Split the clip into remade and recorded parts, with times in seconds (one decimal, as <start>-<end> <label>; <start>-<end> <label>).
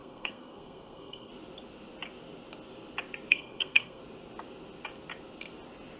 0.0-1.3 remade; 1.3-3.3 recorded; 3.3-4.0 remade; 4.0-6.0 recorded